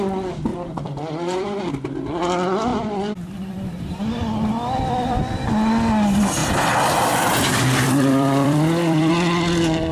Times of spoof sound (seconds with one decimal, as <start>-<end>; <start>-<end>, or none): 0.5-1.7; 2.7-4.0; 6.4-9.1